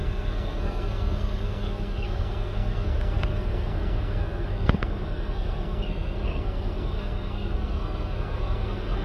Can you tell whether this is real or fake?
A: fake